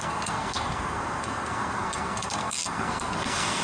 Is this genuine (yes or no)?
no